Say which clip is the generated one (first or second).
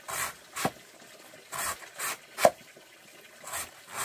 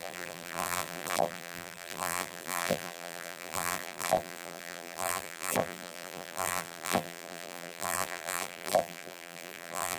second